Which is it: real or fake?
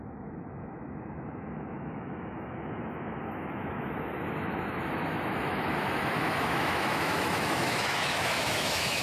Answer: fake